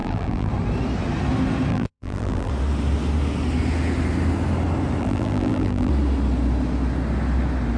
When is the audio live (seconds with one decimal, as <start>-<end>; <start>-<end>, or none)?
0.5-1.7; 2.5-5.0; 5.9-7.8